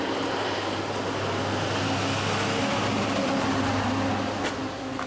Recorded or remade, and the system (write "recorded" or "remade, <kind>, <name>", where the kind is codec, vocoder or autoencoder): recorded